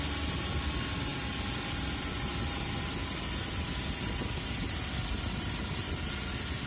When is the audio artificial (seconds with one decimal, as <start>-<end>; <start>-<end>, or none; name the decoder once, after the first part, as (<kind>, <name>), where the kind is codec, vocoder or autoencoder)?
none